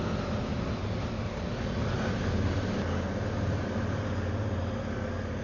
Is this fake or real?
real